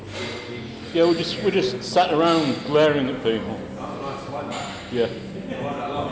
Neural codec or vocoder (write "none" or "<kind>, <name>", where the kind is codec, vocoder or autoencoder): none